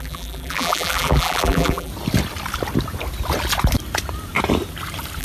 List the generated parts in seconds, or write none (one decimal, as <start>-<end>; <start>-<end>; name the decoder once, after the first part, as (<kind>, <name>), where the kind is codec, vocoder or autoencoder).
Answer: 0.0-1.9 (vocoder, BigVGAN v2)